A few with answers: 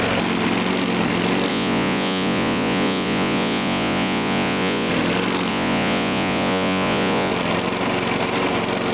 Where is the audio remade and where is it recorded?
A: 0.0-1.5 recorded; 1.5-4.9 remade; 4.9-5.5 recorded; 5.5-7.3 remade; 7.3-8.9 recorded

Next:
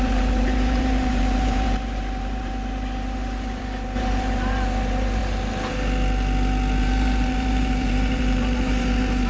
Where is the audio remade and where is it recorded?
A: 0.0-5.2 remade; 5.2-6.8 recorded; 6.8-9.3 remade

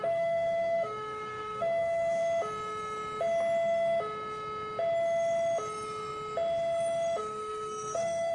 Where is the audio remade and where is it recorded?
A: 0.0-2.2 remade; 2.2-7.2 recorded; 7.2-8.3 remade

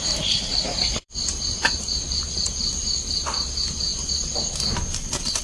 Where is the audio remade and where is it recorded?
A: 0.0-5.4 remade